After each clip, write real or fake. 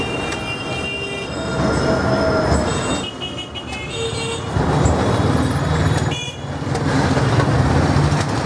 real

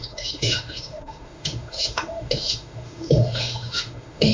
fake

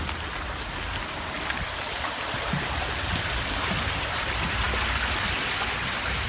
real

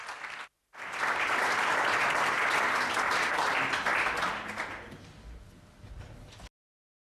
real